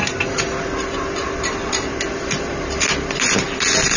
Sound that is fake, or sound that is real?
real